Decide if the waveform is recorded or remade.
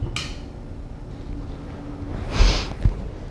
recorded